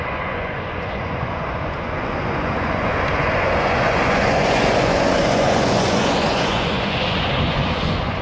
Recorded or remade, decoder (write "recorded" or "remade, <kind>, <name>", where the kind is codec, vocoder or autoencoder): remade, vocoder, Vocos